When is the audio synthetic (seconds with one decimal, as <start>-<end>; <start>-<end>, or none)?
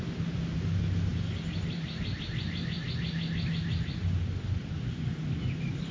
none